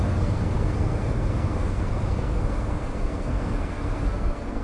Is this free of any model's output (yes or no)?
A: no